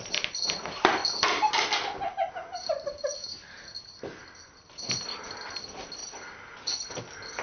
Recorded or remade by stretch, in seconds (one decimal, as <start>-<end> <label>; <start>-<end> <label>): 0.0-7.4 recorded